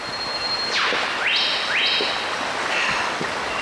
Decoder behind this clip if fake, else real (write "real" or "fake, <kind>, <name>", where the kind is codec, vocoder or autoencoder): real